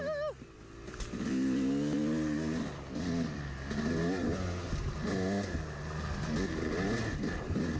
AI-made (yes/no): no